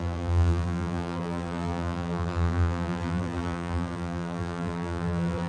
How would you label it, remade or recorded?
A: remade